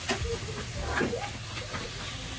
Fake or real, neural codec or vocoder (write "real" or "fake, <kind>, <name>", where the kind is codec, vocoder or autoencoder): real